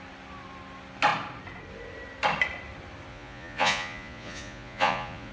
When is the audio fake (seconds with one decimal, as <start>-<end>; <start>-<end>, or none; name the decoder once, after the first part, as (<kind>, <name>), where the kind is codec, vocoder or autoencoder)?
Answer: 3.1-5.3 (vocoder, Vocos)